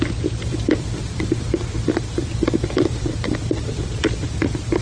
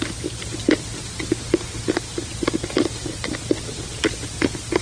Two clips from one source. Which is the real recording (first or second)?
second